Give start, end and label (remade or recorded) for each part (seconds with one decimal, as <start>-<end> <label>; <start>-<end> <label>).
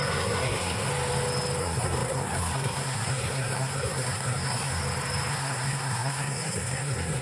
0.0-0.9 remade; 0.9-1.6 recorded; 1.6-4.8 remade; 4.8-5.3 recorded; 5.3-7.2 remade